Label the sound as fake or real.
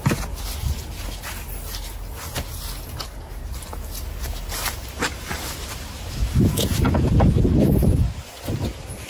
real